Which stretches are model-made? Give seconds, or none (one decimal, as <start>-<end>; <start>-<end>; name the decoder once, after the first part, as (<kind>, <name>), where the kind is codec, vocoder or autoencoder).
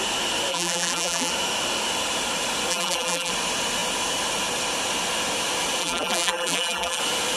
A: 0.5-1.3 (vocoder, BigVGAN v2); 2.7-3.3; 5.8-7.0